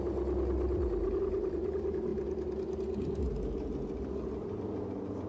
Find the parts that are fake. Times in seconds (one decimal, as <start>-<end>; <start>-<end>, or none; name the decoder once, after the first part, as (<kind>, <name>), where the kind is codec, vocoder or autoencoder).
none